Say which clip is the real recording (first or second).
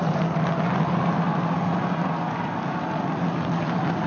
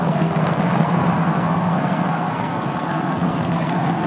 first